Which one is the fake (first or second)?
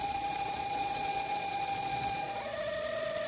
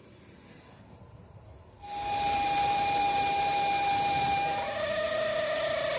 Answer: first